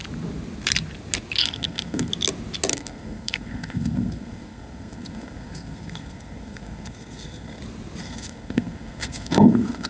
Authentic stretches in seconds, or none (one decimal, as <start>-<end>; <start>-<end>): 0.0-1.4; 2.1-2.7; 7.6-8.0